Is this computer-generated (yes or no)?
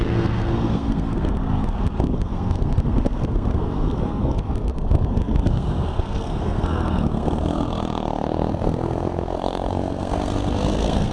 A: yes